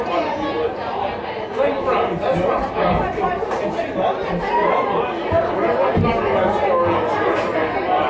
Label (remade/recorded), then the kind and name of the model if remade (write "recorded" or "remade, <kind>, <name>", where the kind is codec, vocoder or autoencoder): recorded